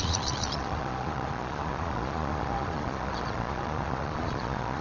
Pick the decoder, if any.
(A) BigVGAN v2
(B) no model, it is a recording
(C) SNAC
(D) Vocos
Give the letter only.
D